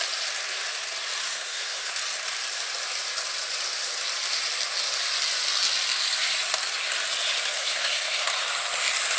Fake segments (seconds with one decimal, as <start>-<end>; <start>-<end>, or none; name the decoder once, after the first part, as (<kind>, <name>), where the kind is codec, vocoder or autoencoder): 1.2-1.9 (codec, SNAC); 7.6-8.3